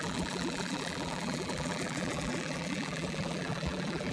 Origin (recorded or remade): remade